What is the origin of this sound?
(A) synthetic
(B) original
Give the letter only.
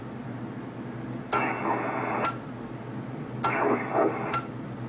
B